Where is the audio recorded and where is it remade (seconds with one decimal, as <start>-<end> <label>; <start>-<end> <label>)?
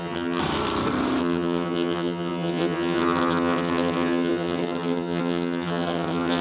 0.0-0.4 remade; 0.4-1.2 recorded; 1.2-6.4 remade